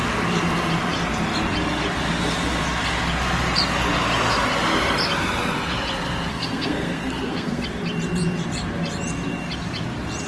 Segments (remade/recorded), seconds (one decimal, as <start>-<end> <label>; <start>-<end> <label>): 0.0-6.3 recorded; 6.3-7.6 remade; 7.6-10.3 recorded